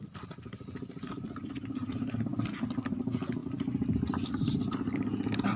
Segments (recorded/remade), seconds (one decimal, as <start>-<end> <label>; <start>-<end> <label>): 0.0-2.3 remade; 2.3-2.9 recorded; 2.9-5.6 remade